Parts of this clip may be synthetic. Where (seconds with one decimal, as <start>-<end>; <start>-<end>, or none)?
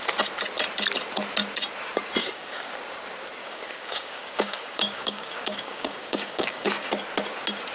2.2-2.7; 3.4-6.9